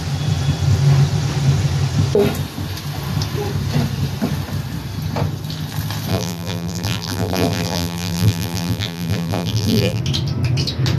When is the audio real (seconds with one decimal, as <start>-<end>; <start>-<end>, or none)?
0.0-6.1; 10.0-11.0